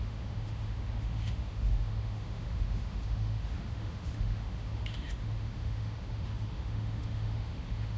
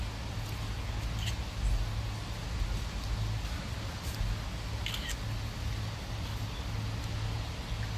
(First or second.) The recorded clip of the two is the second